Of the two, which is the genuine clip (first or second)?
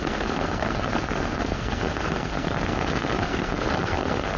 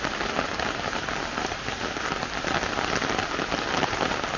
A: second